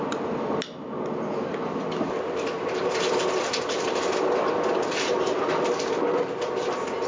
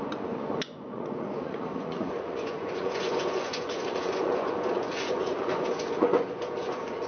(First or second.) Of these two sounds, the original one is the first